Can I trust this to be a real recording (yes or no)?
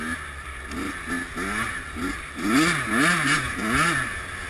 yes